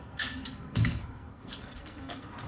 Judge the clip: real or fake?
fake